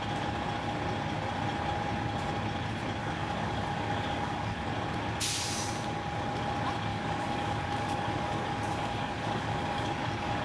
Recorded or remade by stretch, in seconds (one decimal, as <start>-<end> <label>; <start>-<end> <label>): 0.0-3.0 recorded; 3.0-4.7 remade; 4.7-6.9 recorded; 6.9-10.4 remade